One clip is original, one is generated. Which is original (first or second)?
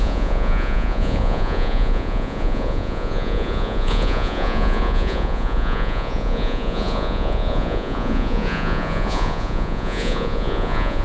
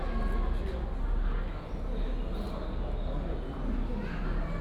second